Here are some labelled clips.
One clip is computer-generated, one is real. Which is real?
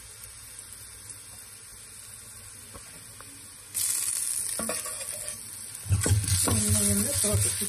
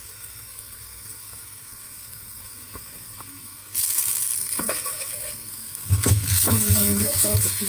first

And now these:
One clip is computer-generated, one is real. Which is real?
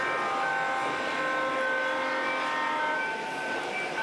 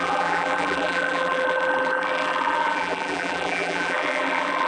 first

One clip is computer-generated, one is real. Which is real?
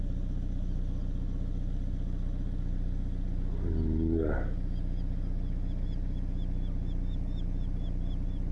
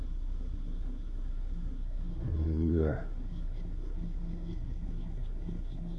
first